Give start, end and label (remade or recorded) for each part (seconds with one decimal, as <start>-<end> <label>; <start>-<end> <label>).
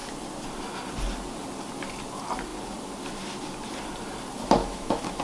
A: 0.0-4.6 recorded; 4.6-5.2 remade